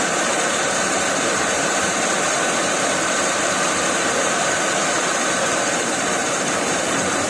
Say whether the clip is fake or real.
fake